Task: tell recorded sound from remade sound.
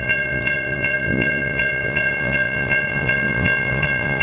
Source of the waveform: remade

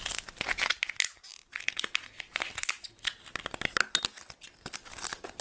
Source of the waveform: recorded